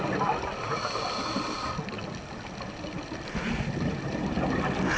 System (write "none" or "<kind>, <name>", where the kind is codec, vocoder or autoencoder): none